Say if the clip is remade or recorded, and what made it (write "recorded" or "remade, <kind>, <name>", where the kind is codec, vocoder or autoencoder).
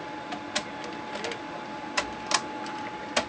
recorded